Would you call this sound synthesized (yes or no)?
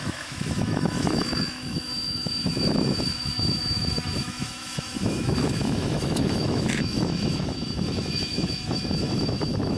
yes